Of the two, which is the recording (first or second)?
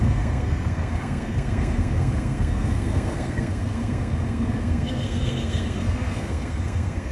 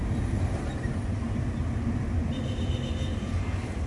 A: second